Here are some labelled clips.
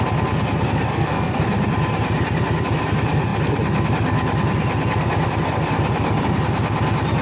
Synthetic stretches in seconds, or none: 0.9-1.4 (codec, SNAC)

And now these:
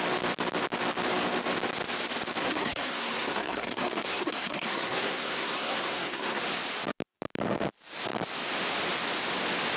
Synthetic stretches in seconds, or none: 2.4-6.4 (codec, SNAC)

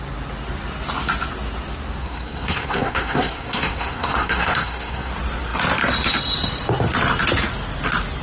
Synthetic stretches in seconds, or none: 2.0-5.1 (codec, SNAC)